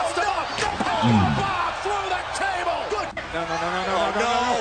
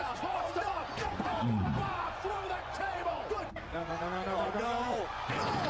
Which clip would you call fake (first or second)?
second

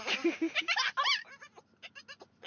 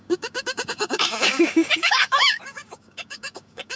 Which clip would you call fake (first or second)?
second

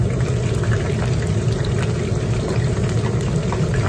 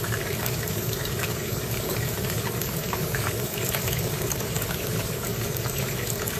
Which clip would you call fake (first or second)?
second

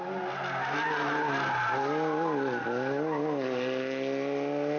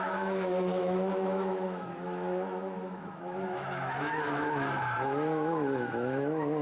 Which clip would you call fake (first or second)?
second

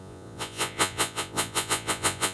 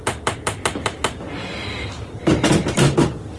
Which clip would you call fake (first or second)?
first